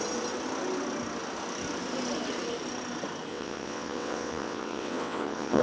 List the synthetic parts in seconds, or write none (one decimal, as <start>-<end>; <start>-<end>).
3.3-5.6